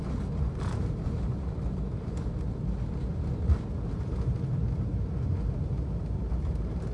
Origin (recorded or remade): recorded